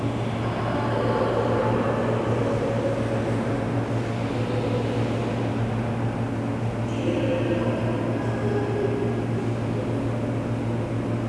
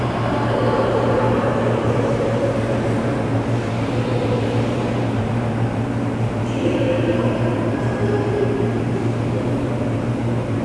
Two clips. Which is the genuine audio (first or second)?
first